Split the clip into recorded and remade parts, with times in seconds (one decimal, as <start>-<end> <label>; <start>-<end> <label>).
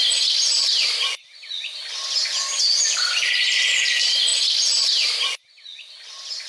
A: 0.0-2.6 recorded; 2.6-4.3 remade; 4.3-6.5 recorded